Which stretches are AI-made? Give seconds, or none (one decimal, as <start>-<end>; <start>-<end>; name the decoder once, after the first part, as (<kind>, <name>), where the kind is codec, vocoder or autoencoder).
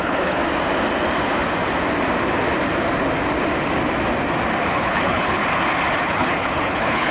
0.0-0.4 (codec, HILCodec); 4.7-5.4; 6.0-7.1